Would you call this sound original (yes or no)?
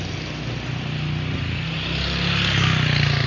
yes